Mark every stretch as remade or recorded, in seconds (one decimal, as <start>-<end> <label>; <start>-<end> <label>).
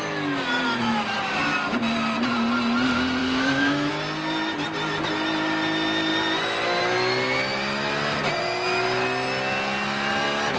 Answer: 0.0-3.2 recorded; 3.2-3.9 remade; 3.9-10.6 recorded